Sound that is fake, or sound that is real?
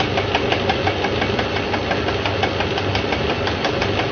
real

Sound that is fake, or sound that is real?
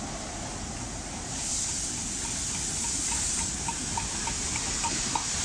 real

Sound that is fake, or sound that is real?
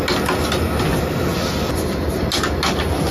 real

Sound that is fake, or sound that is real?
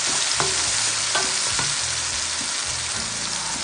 real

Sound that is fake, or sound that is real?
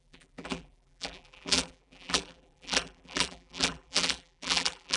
fake